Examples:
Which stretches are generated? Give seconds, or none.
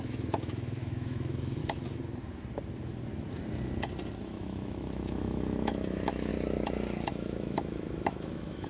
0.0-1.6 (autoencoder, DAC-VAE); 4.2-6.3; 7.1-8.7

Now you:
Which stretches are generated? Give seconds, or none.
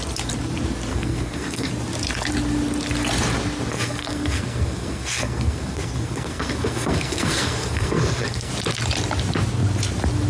0.9-1.7 (codec, SNAC); 3.7-8.5